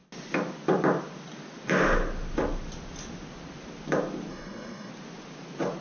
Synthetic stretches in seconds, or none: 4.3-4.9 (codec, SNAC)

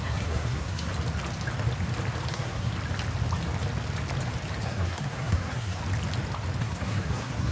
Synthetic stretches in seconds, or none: 0.0-0.9 (codec, SNAC); 2.3-2.7; 4.6-5.8; 6.6-7.5

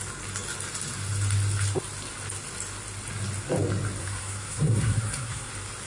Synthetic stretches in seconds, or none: 4.0-5.5 (codec, SNAC)

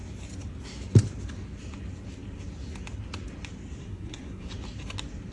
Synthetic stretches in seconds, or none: 3.8-4.5 (codec, SNAC)

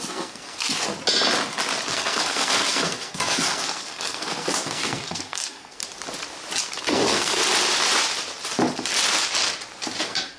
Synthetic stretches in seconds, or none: 0.0-0.9 (codec, SNAC); 1.9-5.8; 6.6-7.4; 10.0-10.4